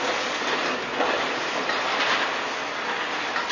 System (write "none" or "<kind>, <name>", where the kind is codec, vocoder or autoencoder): none